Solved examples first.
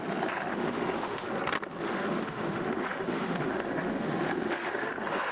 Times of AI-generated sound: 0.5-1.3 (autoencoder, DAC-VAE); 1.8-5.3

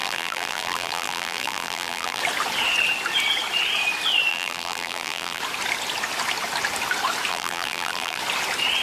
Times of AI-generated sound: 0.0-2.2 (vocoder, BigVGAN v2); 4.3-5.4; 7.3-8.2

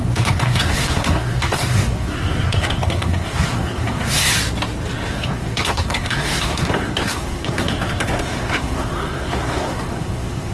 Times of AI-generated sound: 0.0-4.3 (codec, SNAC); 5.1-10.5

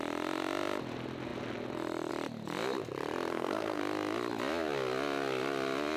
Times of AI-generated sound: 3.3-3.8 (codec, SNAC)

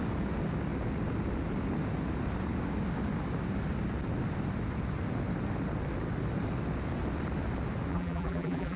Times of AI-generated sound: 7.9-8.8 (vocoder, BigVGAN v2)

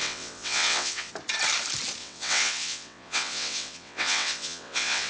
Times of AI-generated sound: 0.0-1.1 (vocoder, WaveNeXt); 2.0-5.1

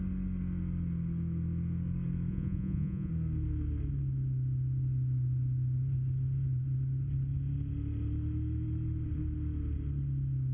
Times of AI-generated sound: 2.3-3.1 (vocoder, Vocos)